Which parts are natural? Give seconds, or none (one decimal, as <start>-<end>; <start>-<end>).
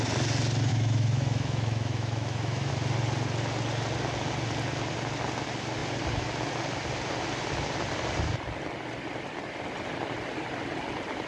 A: 0.0-0.7; 2.7-11.3